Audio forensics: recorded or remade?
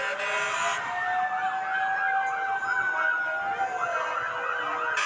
recorded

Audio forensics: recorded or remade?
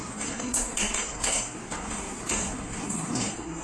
remade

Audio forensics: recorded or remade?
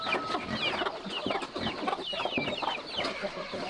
recorded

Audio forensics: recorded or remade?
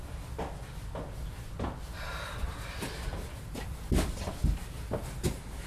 recorded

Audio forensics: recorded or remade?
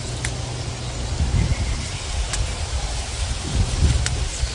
recorded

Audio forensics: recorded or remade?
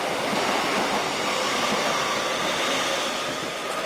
recorded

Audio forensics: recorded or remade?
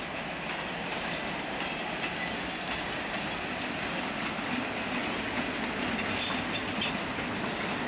recorded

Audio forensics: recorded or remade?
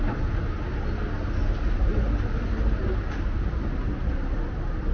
recorded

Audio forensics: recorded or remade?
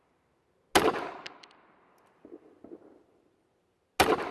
recorded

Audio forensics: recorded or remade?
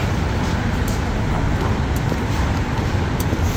recorded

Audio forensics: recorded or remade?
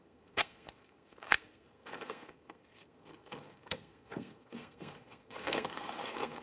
remade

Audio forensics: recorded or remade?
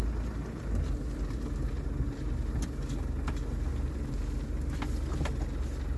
recorded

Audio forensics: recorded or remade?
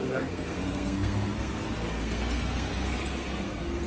remade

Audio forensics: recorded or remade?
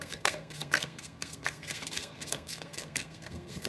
remade